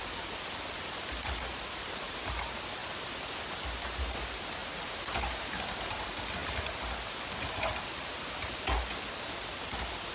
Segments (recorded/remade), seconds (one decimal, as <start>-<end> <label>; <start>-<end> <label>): 0.0-10.1 recorded

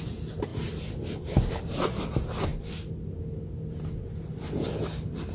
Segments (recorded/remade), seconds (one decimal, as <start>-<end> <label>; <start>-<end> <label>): 0.0-5.3 recorded

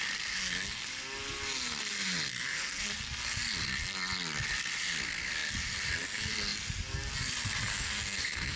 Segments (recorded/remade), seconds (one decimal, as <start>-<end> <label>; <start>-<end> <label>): 0.0-2.3 recorded; 2.3-2.8 remade; 2.8-7.7 recorded; 7.7-8.6 remade

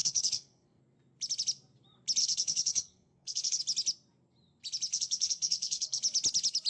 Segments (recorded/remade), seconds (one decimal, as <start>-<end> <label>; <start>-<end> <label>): 0.0-0.8 remade; 0.8-2.2 recorded; 2.2-3.6 remade; 3.6-4.9 recorded; 4.9-6.0 remade; 6.0-6.7 recorded

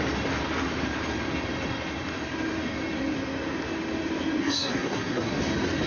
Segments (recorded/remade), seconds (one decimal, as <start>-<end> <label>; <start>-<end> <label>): 0.0-4.4 recorded; 4.4-5.4 remade; 5.4-5.9 recorded

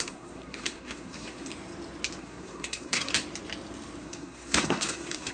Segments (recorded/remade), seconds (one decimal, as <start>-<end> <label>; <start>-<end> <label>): 0.0-1.5 remade; 1.5-2.2 recorded; 2.2-3.1 remade; 3.1-4.0 recorded; 4.0-5.3 remade